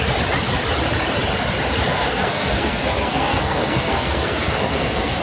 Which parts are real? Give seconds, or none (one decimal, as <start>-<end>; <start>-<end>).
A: 0.0-1.9